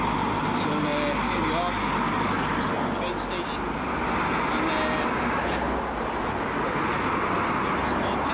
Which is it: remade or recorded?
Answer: recorded